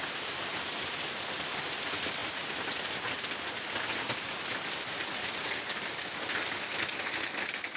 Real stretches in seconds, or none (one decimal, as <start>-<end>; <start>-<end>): 0.0-7.8

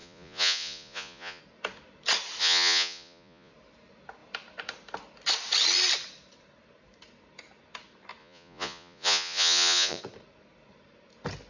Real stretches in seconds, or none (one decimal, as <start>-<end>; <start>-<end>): 1.4-2.4; 3.5-8.2; 10.0-11.5